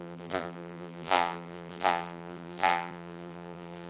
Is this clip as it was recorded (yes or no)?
no